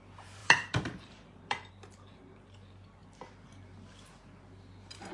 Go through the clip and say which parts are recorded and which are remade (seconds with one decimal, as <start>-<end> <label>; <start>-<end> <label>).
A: 0.0-0.4 recorded; 0.4-1.7 remade; 1.7-5.1 recorded